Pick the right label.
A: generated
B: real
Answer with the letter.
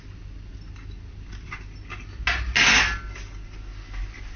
B